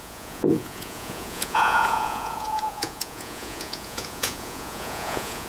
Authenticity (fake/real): fake